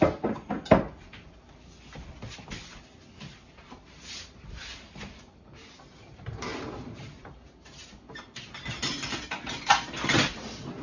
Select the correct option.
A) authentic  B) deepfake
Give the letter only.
A